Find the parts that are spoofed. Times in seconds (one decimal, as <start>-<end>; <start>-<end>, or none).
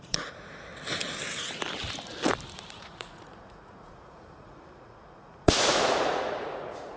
0.0-0.7; 2.7-7.0